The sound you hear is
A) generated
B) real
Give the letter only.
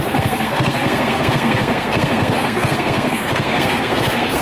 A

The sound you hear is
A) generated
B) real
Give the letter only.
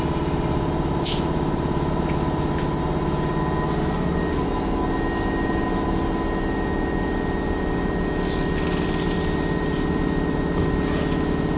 B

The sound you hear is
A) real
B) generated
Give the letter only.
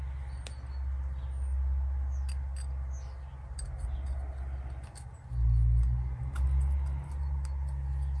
A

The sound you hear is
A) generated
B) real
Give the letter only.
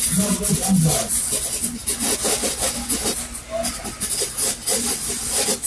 B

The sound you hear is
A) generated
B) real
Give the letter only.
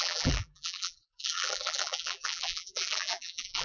A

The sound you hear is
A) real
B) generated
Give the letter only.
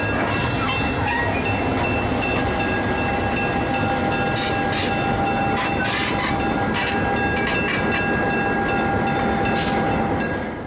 A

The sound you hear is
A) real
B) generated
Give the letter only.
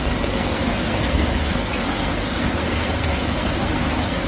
B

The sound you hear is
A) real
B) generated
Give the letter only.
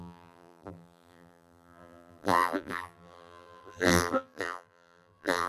B